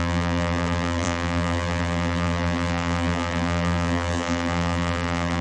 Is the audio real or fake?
fake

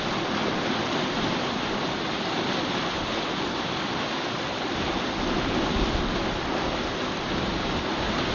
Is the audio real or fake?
real